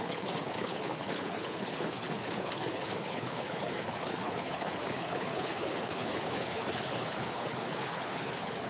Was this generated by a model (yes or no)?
yes